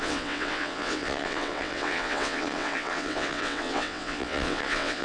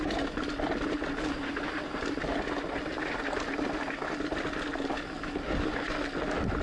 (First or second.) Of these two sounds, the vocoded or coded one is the first